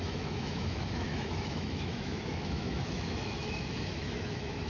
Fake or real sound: fake